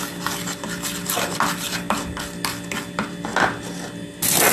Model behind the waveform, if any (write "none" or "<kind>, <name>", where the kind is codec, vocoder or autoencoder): none